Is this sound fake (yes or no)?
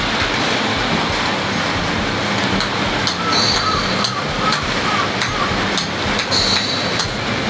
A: no